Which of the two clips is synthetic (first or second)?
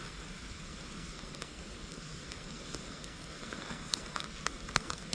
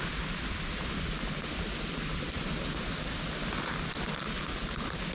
first